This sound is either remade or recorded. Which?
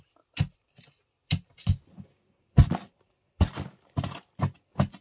recorded